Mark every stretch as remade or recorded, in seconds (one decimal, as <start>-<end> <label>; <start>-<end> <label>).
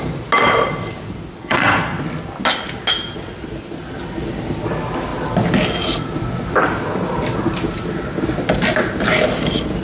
0.0-1.4 recorded; 1.4-2.0 remade; 2.0-9.8 recorded